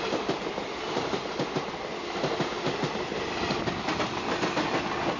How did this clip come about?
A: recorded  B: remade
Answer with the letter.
A